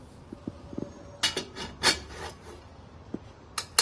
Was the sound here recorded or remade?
recorded